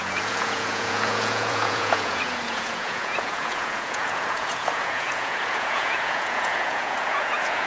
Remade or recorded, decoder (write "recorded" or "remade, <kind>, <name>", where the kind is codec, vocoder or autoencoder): remade, vocoder, Vocos